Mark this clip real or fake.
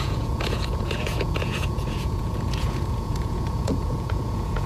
fake